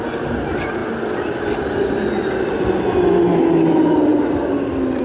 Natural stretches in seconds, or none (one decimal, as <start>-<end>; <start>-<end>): 0.0-5.0